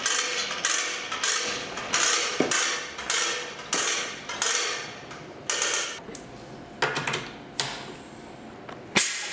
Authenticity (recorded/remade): recorded